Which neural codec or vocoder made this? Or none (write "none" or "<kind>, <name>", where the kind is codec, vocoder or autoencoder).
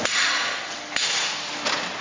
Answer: none